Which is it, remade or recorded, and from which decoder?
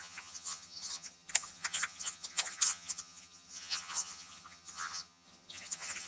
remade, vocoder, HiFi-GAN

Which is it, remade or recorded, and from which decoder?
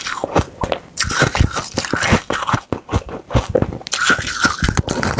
recorded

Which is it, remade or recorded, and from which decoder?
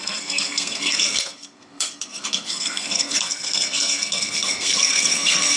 remade, codec, SNAC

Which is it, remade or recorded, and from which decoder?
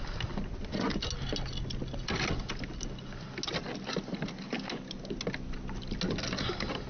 recorded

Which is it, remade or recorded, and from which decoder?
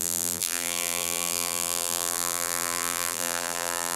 remade, vocoder, BigVGAN v2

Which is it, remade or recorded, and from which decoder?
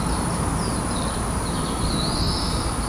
remade, vocoder, BigVGAN v2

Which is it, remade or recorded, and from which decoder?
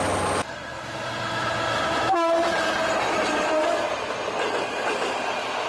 recorded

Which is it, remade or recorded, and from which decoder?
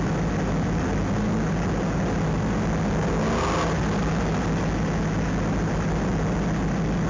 recorded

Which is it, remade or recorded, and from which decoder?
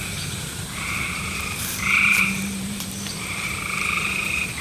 remade, vocoder, BigVGAN v2